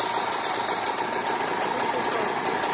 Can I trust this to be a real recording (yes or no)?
yes